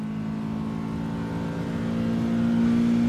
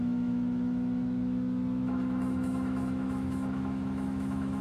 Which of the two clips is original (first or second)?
first